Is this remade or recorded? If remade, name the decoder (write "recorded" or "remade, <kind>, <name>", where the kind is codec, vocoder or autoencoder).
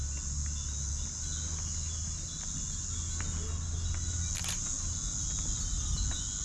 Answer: recorded